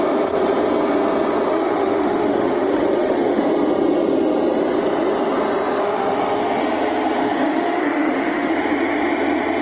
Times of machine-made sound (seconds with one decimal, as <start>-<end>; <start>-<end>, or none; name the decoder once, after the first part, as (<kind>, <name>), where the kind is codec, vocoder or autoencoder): 1.5-3.4 (autoencoder, DAC-VAE); 5.8-6.6; 7.2-8.5